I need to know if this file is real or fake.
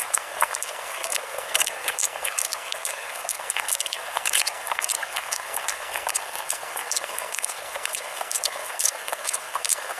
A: fake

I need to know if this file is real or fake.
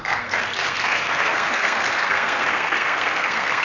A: fake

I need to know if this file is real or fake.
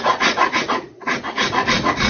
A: fake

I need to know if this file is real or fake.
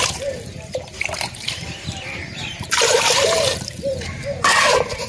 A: fake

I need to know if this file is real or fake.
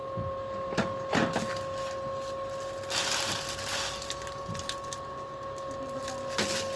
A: real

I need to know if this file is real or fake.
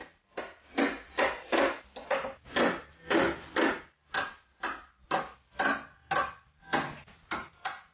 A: real